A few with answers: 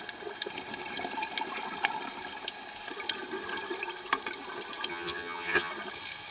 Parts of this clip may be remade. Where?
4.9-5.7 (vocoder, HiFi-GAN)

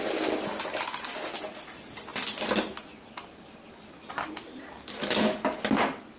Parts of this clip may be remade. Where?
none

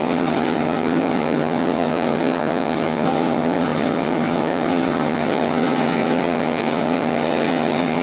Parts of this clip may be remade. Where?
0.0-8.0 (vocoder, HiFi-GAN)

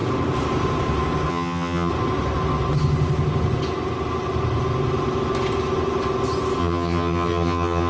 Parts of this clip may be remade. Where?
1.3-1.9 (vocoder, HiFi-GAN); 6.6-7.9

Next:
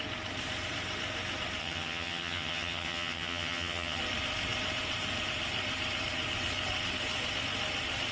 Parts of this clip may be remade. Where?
1.6-4.0 (vocoder, HiFi-GAN)